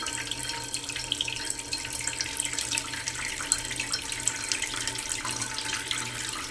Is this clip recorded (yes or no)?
yes